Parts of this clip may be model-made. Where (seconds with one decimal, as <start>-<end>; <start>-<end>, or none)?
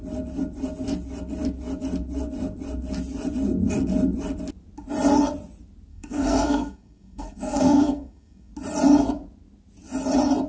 5.9-8.5